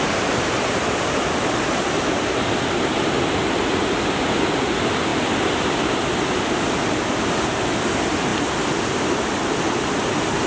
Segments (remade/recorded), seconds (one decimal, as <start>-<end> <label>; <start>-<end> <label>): 0.0-10.5 recorded